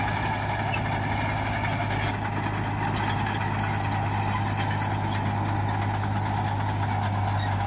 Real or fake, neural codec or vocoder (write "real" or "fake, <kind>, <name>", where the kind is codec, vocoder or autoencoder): real